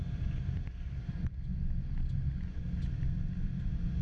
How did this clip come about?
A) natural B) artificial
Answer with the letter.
A